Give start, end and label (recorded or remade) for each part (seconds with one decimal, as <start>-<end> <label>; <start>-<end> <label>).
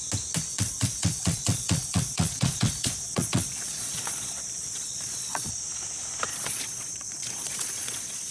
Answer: 0.0-0.5 recorded; 0.5-5.5 remade; 5.5-6.3 recorded; 6.3-8.3 remade